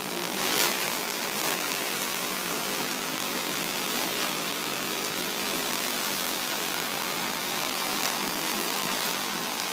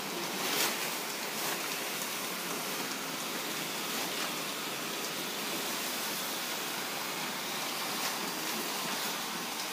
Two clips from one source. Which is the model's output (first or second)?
first